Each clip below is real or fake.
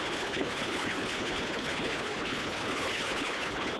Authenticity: fake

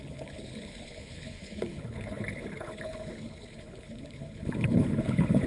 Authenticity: fake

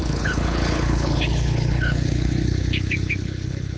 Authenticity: fake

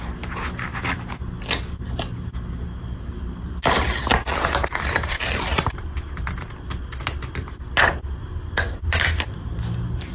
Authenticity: real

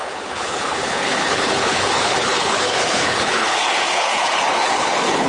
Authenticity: fake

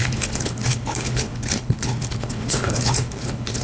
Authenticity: fake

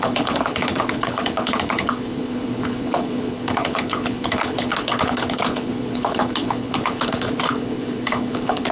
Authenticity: fake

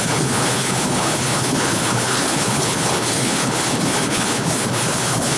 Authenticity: fake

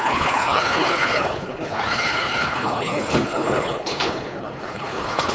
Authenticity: fake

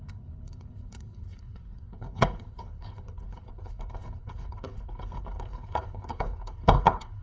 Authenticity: fake